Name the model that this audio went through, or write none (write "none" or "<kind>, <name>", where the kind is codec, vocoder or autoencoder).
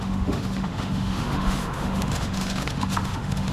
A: autoencoder, DAC-VAE